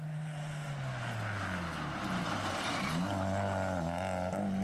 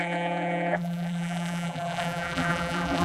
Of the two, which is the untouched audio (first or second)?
first